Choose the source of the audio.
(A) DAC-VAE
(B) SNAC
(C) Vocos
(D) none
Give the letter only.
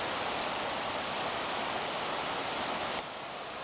D